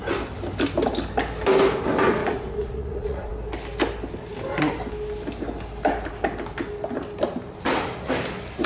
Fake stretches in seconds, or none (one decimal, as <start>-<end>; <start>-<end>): 2.2-3.3